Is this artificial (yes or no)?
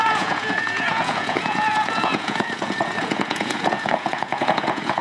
yes